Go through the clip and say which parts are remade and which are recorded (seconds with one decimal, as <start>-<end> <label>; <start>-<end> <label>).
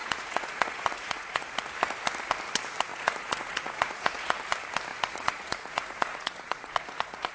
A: 0.0-1.5 remade; 1.5-2.9 recorded; 2.9-4.4 remade; 4.4-4.9 recorded; 4.9-7.3 remade